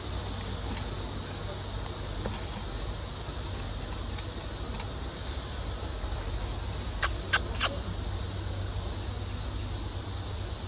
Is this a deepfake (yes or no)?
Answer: no